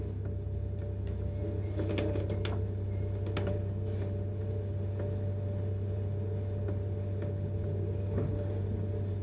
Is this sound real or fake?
real